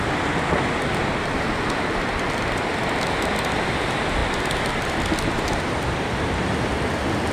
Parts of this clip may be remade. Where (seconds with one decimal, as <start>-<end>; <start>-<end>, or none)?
none